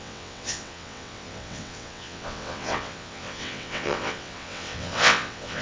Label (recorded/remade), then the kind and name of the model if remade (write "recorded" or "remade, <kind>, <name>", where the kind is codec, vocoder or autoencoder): remade, vocoder, WaveNeXt